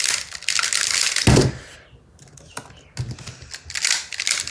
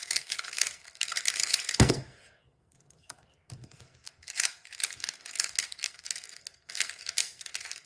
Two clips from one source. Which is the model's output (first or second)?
second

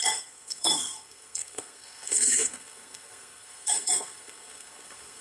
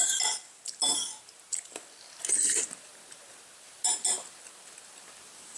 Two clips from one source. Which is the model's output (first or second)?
first